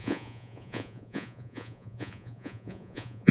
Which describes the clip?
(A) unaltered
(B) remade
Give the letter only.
B